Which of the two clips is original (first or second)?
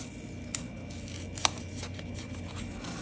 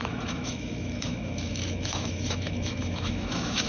first